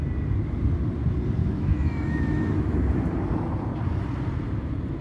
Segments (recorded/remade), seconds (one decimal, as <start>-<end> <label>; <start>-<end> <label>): 0.0-1.4 recorded; 1.4-2.8 remade; 2.8-5.0 recorded